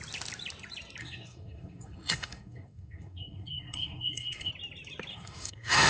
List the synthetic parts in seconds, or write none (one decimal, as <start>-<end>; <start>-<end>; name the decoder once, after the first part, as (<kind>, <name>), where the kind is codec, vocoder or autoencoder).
1.0-4.5 (codec, SNAC); 5.1-5.9